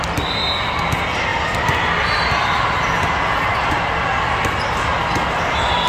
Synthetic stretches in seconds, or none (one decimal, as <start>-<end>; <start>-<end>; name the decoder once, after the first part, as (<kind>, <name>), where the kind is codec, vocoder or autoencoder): none

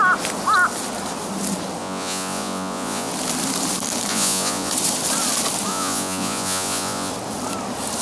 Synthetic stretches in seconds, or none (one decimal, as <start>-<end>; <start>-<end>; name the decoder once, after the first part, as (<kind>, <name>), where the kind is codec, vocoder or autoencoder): 1.8-3.1 (vocoder, Vocos); 4.1-4.7; 5.7-7.1

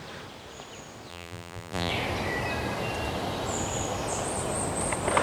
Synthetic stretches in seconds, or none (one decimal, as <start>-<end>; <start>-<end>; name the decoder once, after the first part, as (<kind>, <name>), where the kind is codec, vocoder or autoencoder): 1.1-1.9 (vocoder, BigVGAN v2)

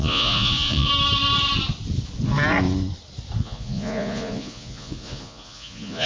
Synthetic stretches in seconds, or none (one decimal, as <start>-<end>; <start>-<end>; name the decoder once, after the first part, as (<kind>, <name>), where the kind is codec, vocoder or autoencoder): 0.0-0.9 (vocoder, Vocos); 3.4-6.1

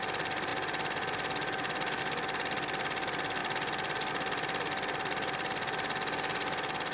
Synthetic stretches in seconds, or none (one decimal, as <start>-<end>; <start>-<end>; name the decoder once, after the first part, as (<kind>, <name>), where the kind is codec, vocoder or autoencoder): none

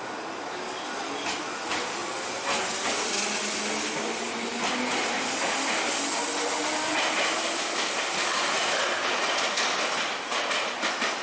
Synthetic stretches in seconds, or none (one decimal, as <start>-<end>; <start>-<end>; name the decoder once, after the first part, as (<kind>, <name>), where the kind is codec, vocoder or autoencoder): none

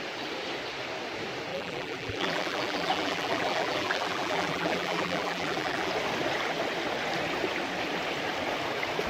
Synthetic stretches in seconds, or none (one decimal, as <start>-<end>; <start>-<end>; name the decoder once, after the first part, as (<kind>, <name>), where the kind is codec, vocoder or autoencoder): 1.5-5.9 (vocoder, BigVGAN v2)

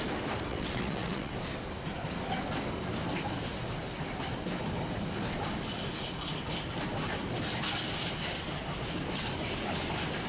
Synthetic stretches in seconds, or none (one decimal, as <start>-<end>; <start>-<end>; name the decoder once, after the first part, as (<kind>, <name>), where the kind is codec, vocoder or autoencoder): 0.5-1.3 (vocoder, WaveNeXt)